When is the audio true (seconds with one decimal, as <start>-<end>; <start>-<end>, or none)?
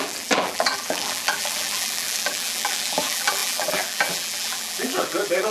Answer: none